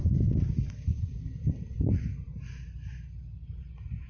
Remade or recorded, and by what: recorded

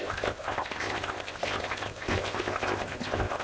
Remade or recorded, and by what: remade, codec, ZipCodec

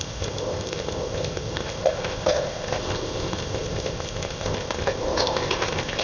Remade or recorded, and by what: remade, codec, ZipCodec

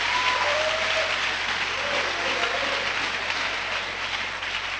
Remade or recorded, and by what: recorded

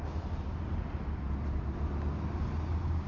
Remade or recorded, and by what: recorded